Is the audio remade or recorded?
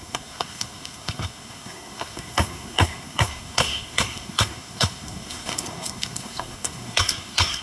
remade